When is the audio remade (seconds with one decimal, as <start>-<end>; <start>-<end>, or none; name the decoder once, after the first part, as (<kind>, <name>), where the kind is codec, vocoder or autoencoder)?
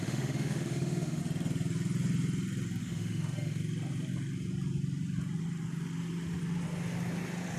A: 0.0-1.2 (autoencoder, DAC-VAE); 2.8-3.6